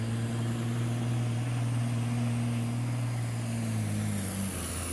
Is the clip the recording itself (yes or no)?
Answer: yes